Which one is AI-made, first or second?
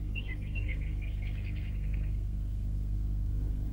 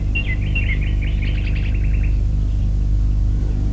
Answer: first